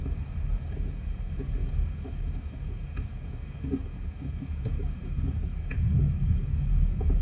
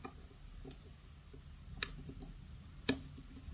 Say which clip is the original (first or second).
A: second